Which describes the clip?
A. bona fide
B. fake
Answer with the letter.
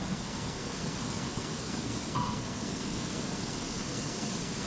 B